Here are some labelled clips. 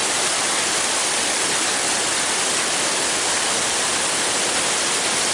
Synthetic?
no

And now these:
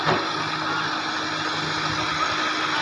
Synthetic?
no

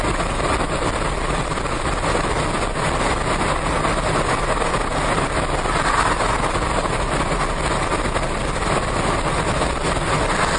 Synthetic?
no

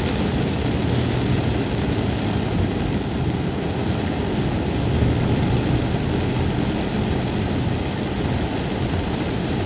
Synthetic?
no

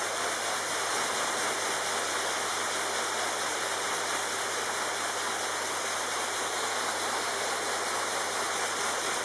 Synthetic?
no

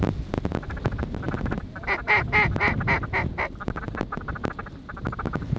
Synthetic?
no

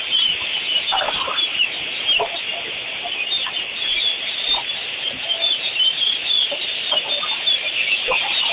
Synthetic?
yes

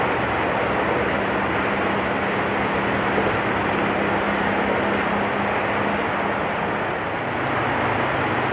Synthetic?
no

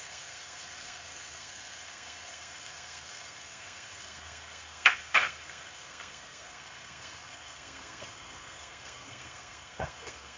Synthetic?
yes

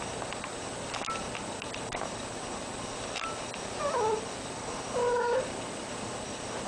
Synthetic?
no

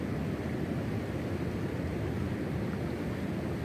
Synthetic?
no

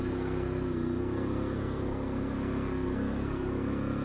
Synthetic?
yes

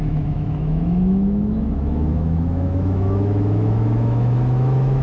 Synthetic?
yes